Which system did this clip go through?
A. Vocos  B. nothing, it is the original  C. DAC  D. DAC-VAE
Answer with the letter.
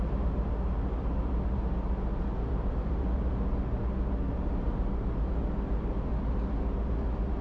B